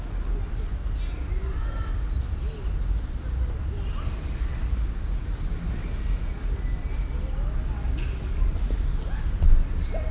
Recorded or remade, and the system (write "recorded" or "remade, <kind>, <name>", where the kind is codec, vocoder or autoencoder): recorded